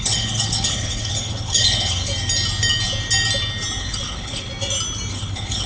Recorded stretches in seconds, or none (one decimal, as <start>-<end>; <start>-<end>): 2.1-3.8; 4.5-5.1